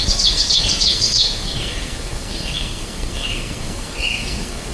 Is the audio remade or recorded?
remade